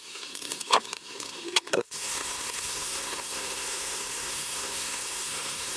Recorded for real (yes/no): no